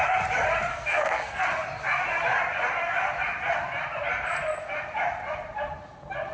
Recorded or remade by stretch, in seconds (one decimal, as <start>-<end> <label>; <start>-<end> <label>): 0.0-0.7 recorded; 0.7-1.4 remade; 1.4-6.3 recorded